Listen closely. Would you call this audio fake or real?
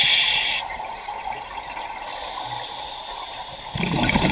real